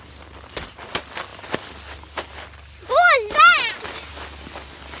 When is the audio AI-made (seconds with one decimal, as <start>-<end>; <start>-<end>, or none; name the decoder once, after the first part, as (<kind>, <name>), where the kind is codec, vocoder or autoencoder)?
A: none